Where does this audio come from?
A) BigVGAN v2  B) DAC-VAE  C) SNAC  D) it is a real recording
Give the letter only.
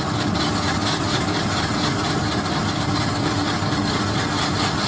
D